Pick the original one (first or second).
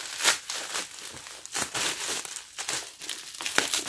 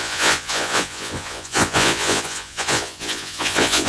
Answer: first